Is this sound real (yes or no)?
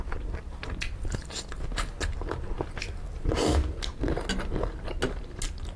yes